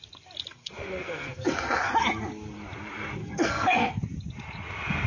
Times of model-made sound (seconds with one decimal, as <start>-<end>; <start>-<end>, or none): 0.6-1.9; 3.2-3.9